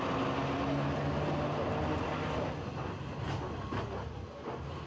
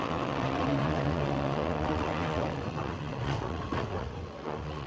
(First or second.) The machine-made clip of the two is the second